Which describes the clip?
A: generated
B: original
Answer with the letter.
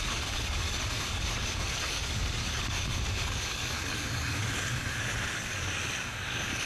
A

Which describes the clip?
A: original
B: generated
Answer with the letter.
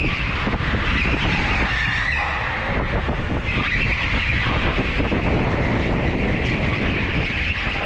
A